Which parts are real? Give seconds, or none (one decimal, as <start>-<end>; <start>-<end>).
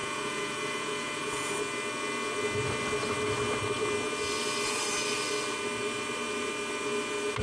1.5-7.4